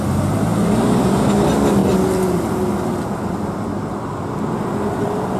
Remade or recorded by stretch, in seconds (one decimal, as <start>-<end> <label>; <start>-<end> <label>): 0.0-5.4 recorded